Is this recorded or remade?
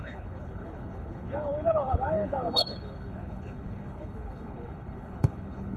remade